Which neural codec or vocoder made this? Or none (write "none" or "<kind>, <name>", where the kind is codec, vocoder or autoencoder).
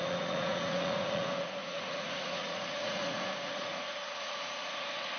vocoder, Vocos